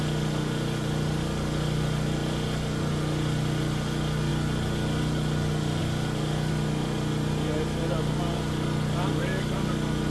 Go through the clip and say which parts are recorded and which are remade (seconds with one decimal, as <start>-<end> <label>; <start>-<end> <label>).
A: 0.0-10.1 recorded